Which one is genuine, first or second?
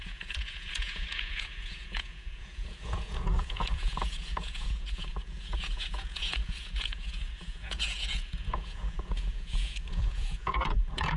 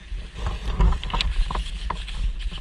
second